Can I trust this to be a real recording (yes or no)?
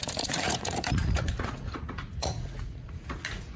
no